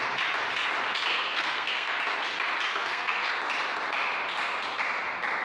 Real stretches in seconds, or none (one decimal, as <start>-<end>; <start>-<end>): 0.0-1.1; 1.9-2.7; 3.3-5.4